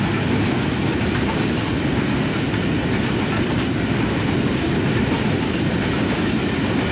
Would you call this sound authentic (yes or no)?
yes